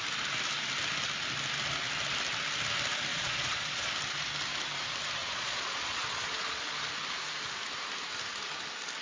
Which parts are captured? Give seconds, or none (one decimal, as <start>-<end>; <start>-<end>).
0.0-3.1; 3.9-5.2; 6.9-9.0